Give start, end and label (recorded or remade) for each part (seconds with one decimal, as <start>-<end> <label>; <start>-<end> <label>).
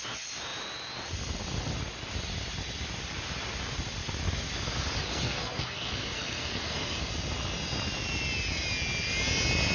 0.0-5.1 recorded; 5.1-7.1 remade; 7.1-9.7 recorded